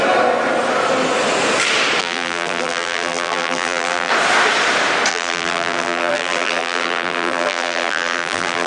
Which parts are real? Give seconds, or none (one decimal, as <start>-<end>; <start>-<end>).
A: 0.0-2.0; 4.1-5.1